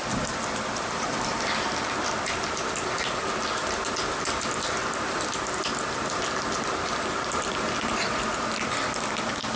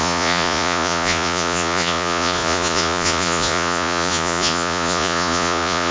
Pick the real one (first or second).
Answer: first